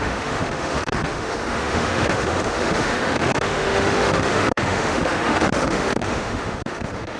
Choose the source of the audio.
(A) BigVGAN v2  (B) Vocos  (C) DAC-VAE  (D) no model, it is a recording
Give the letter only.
C